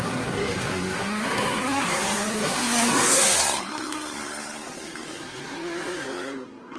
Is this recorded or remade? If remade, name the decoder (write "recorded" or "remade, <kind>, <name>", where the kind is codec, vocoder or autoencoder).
remade, codec, SNAC